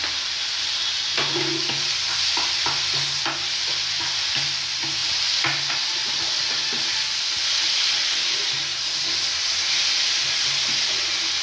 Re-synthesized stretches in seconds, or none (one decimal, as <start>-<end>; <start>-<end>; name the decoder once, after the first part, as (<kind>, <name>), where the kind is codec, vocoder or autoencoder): none